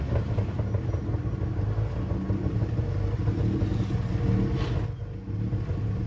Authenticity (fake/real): real